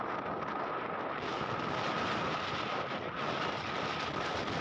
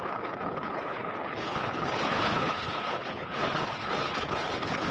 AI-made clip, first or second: second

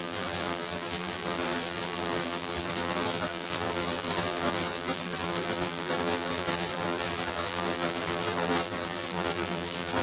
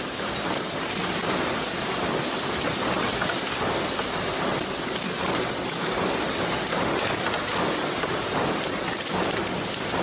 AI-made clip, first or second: first